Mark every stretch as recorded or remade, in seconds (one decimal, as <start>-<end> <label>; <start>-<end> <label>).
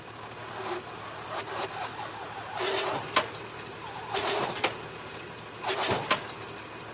0.0-6.9 recorded